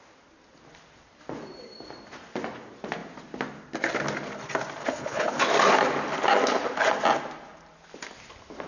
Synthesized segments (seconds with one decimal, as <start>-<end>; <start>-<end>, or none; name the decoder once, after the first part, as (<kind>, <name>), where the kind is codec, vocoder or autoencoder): 4.8-5.4 (codec, HILCodec)